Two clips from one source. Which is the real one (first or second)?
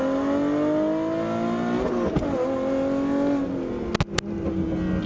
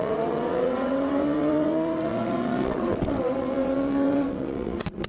first